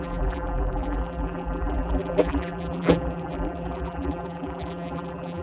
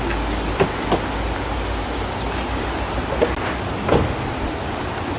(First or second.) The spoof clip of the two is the first